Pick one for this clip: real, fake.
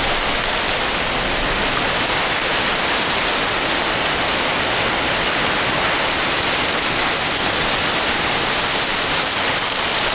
real